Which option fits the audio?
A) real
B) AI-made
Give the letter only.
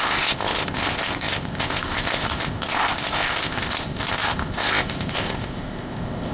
B